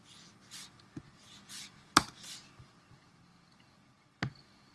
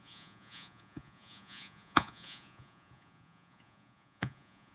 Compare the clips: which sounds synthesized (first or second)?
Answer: second